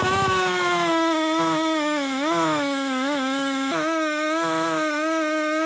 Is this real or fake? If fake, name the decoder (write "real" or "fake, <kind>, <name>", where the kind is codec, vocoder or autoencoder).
fake, autoencoder, DAC-VAE